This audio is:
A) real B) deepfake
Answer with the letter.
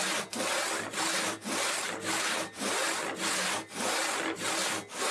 A